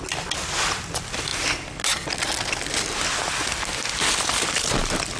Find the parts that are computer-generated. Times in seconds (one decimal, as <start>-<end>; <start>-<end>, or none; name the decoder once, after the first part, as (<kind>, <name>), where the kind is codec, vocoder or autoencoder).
none